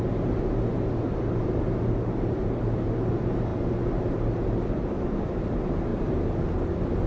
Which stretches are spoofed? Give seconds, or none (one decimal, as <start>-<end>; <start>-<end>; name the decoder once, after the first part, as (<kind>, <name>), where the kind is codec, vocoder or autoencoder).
none